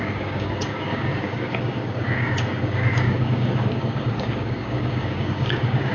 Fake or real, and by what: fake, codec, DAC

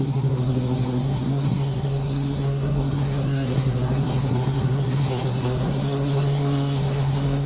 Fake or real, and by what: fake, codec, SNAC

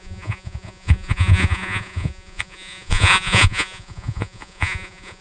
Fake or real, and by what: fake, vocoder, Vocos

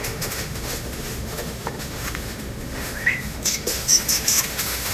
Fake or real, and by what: fake, autoencoder, DAC-VAE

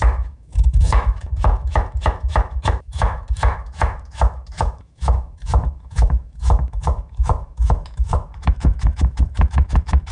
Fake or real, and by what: fake, autoencoder, DAC-VAE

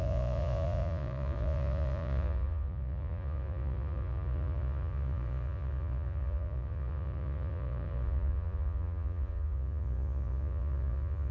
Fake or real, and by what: fake, vocoder, Vocos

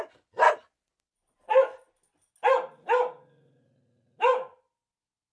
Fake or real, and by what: real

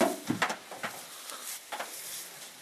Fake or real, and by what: real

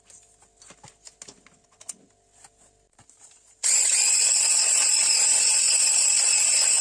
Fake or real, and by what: real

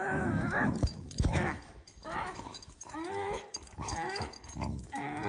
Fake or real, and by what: fake, autoencoder, DAC-VAE